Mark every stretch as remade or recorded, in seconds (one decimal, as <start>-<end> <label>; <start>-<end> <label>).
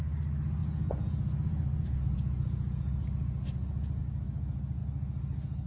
0.0-0.6 recorded; 0.6-4.0 remade; 4.0-4.8 recorded; 4.8-5.7 remade